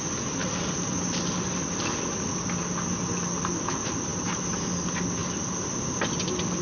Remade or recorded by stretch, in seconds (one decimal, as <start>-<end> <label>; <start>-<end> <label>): 0.0-0.4 recorded; 0.4-1.2 remade; 1.2-4.1 recorded; 4.1-4.7 remade; 4.7-5.2 recorded; 5.2-5.7 remade; 5.7-6.6 recorded